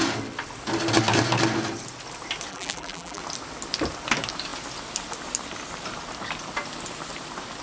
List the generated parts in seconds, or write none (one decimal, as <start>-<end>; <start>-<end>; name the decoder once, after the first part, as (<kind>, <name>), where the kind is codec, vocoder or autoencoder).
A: 2.5-3.2 (vocoder, BigVGAN v2)